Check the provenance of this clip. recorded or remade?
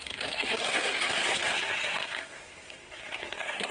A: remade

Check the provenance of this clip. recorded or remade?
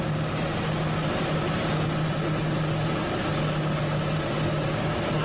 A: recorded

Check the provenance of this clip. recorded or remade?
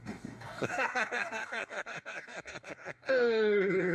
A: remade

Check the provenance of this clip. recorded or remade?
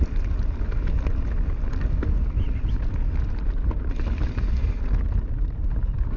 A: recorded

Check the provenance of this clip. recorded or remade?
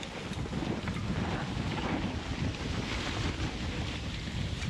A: recorded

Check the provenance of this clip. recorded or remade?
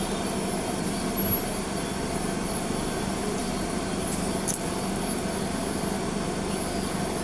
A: recorded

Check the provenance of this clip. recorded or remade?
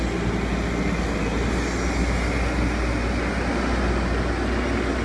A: recorded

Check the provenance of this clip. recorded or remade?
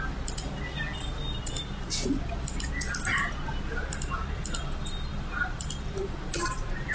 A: recorded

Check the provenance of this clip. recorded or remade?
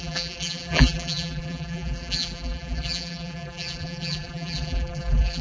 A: remade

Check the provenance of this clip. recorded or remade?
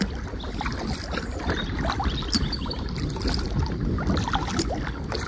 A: recorded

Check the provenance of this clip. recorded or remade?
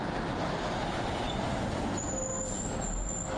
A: recorded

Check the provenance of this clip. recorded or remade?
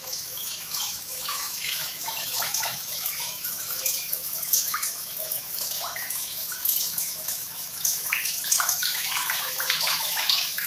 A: remade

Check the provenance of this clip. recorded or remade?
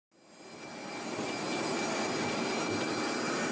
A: recorded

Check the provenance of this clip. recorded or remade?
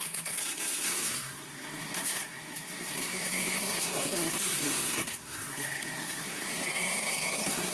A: remade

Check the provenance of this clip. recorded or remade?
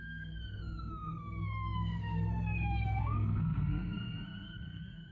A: remade